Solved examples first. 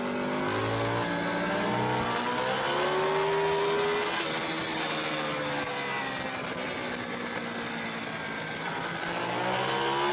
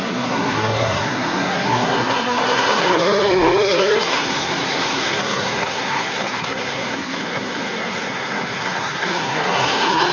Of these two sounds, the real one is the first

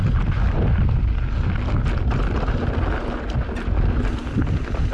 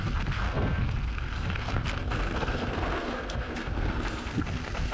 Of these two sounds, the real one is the first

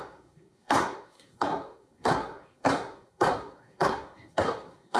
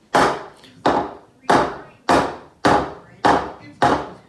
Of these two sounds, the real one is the second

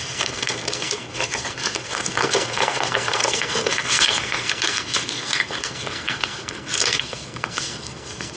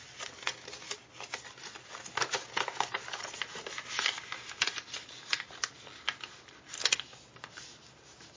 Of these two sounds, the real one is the second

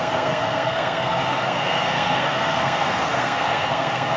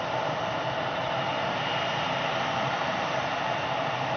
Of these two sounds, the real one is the second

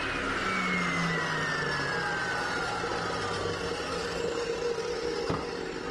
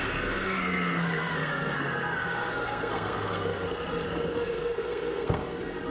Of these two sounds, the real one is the first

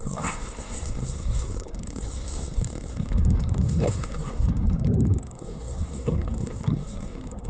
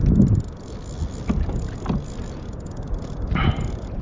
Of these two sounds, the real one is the second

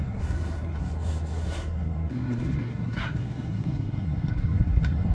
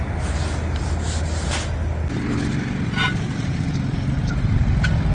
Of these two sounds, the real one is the second